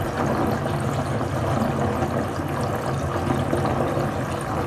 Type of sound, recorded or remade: recorded